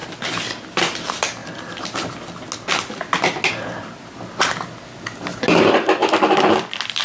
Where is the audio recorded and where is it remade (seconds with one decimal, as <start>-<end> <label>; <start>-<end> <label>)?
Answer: 0.0-0.8 recorded; 0.8-1.4 remade; 1.4-5.6 recorded; 5.6-7.0 remade